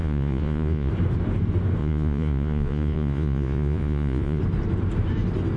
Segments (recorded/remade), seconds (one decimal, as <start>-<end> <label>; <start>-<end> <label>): 0.0-0.9 remade; 0.9-1.8 recorded; 1.8-4.4 remade; 4.4-5.6 recorded